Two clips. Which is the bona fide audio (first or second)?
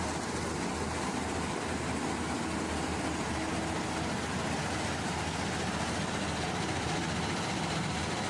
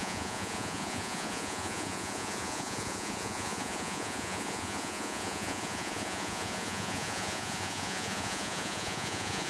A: first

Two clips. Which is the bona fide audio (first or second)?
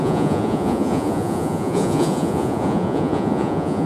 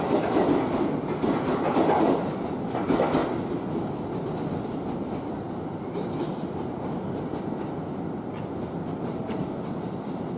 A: second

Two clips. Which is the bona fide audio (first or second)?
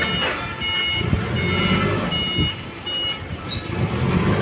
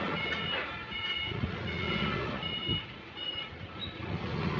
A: first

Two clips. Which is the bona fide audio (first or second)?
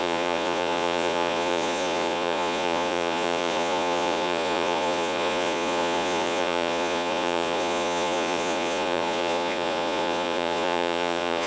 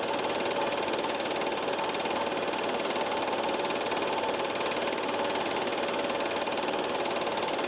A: second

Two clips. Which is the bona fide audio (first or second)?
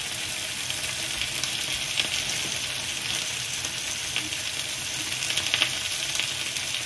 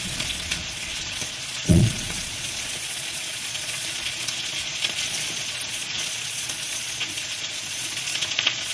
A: first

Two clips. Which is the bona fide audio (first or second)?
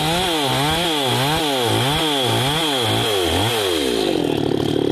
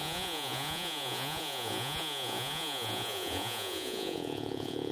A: first